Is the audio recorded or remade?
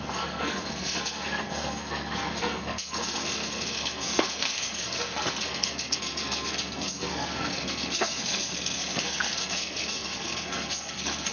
remade